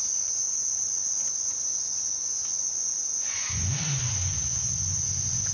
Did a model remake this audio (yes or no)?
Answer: yes